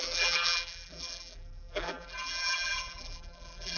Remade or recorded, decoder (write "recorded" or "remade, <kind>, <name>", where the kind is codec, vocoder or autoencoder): remade, vocoder, BigVGAN v2